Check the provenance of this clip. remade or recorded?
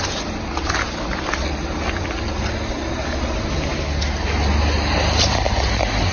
recorded